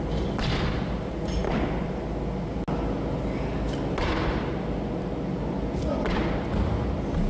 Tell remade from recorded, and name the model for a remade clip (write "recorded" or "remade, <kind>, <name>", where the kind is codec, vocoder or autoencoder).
recorded